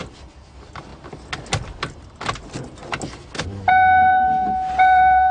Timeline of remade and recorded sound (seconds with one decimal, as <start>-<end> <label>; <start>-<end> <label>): 0.0-0.9 remade; 0.9-3.7 recorded; 3.7-5.3 remade